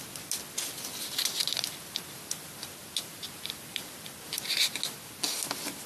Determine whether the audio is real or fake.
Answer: real